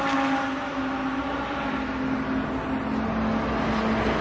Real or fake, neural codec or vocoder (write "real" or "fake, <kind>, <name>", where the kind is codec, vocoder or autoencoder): real